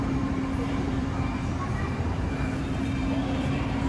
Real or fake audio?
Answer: fake